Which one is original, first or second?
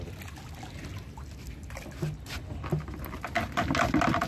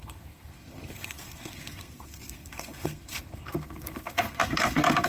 first